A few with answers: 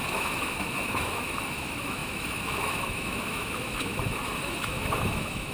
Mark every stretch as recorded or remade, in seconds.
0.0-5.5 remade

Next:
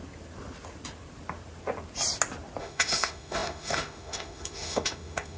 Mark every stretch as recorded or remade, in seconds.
0.0-2.6 recorded; 2.6-5.4 remade